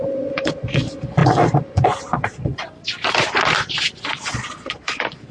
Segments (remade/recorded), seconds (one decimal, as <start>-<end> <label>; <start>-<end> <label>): 0.0-2.5 remade; 2.5-4.3 recorded; 4.3-5.3 remade

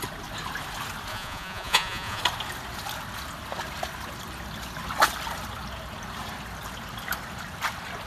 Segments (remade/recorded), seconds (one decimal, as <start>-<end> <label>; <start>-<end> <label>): 0.0-1.1 recorded; 1.1-2.2 remade; 2.2-8.1 recorded

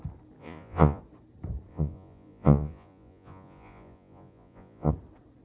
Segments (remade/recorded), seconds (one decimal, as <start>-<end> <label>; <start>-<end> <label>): 0.0-0.4 recorded; 0.4-1.0 remade; 1.0-1.7 recorded; 1.7-4.9 remade; 4.9-5.4 recorded

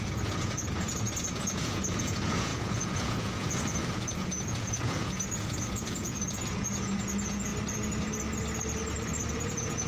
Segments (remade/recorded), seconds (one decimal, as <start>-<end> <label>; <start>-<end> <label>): 0.0-7.5 remade; 7.5-9.3 recorded; 9.3-9.9 remade

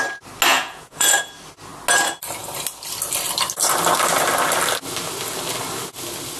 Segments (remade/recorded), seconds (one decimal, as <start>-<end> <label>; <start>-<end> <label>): 0.0-0.5 recorded; 0.5-1.2 remade; 1.2-6.4 recorded

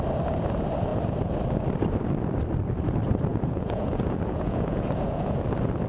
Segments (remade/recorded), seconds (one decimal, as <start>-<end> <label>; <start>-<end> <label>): 0.0-3.3 recorded; 3.3-5.4 remade; 5.4-5.9 recorded

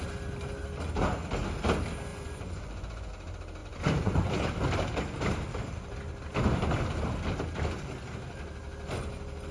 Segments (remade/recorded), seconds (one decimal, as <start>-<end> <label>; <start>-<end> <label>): 0.0-2.1 recorded; 2.1-3.1 remade; 3.1-3.6 recorded; 3.6-4.3 remade; 4.3-9.5 recorded